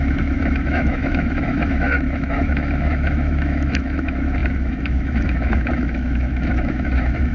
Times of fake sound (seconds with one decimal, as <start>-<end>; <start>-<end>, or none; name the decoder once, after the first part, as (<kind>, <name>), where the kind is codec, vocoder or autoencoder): 0.0-7.3 (autoencoder, DAC-VAE)